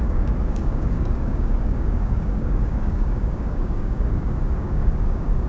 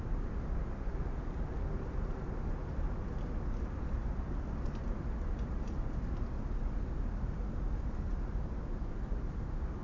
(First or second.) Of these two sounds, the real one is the second